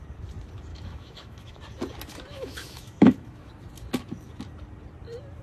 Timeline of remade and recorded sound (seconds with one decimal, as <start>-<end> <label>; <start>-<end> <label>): 0.0-0.7 recorded; 0.7-1.6 remade; 1.6-2.3 recorded; 2.3-3.5 remade; 3.5-5.4 recorded